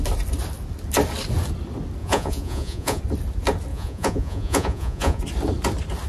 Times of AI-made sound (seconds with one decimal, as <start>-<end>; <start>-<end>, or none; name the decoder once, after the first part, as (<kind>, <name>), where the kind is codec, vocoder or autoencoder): 2.0-3.0 (vocoder, Vocos); 3.7-5.2